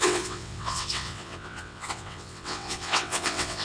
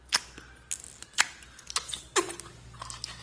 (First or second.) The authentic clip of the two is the second